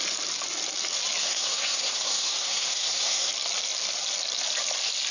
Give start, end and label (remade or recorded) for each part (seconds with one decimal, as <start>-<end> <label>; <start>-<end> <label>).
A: 0.0-1.2 recorded; 1.2-3.3 remade; 3.3-5.1 recorded